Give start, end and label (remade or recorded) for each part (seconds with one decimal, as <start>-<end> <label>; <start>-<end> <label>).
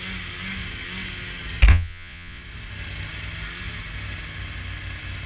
0.0-1.7 recorded; 1.7-2.4 remade; 2.4-5.3 recorded